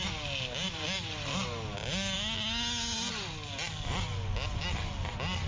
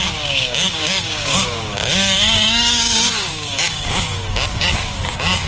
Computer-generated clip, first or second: second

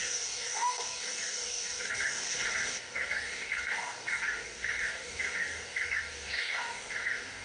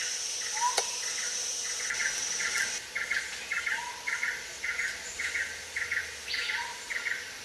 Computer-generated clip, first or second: first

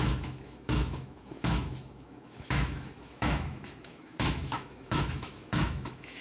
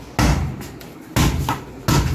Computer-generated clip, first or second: first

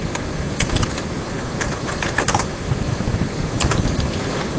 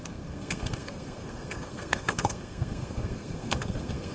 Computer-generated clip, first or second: second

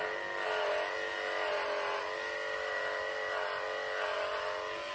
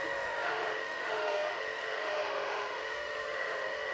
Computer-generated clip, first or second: second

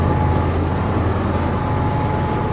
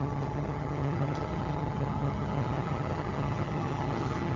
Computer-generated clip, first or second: second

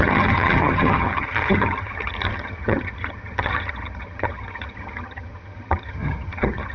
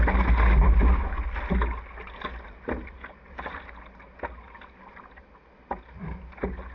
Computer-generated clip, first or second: first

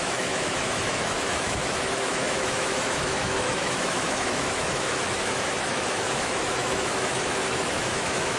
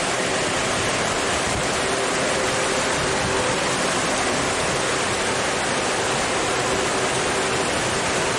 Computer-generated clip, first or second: first